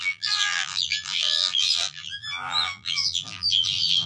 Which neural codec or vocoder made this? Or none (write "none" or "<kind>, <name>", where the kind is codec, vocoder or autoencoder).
vocoder, BigVGAN v2